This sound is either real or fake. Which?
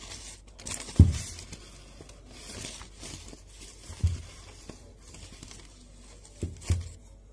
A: real